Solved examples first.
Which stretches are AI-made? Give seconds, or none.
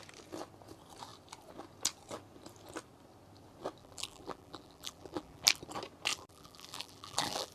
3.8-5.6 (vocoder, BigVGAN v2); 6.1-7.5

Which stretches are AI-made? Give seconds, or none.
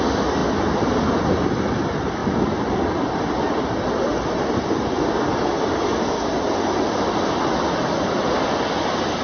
none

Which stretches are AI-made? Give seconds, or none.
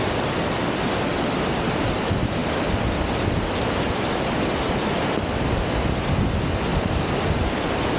1.1-1.8 (vocoder, BigVGAN v2); 6.7-8.0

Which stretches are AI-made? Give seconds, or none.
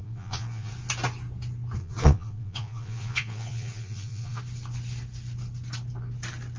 0.0-0.7 (vocoder, Vocos); 1.8-4.4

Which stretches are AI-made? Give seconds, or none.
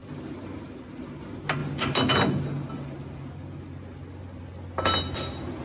none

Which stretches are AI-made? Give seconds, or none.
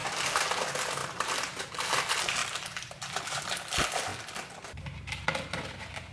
1.0-1.7 (vocoder, BigVGAN v2); 2.4-3.4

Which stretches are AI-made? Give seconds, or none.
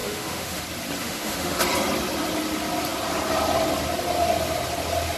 0.0-0.6 (autoencoder, DAC-VAE); 1.0-1.6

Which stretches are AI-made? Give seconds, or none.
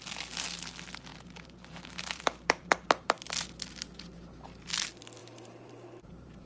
1.1-3.3 (vocoder, BigVGAN v2); 5.2-6.5